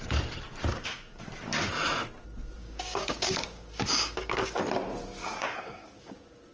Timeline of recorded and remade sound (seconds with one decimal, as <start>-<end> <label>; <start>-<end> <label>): 0.0-0.7 recorded; 0.7-1.2 remade; 1.2-2.6 recorded; 2.6-4.6 remade; 4.6-5.2 recorded; 5.2-6.1 remade; 6.1-6.5 recorded